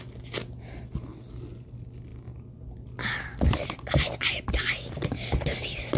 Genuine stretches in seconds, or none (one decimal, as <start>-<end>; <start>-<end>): 0.0-6.0